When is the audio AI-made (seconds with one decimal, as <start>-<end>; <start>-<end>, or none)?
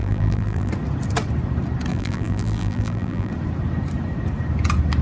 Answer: 0.0-0.7; 1.9-3.3